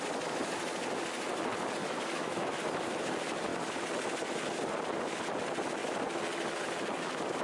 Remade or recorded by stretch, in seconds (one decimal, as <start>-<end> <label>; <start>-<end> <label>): 0.0-1.8 recorded; 1.8-2.6 remade; 2.6-7.4 recorded